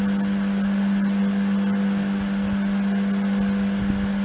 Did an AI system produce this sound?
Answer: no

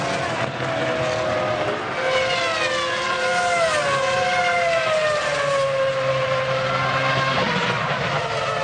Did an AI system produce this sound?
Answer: no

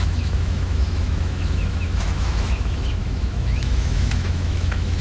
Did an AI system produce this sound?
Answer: yes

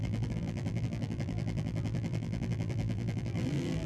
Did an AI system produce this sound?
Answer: yes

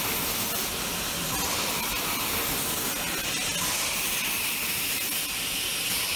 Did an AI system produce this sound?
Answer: no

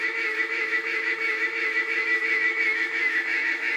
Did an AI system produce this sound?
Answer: yes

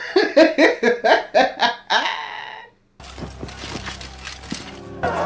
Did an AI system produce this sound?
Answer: no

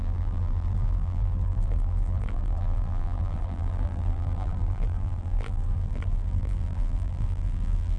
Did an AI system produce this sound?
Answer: yes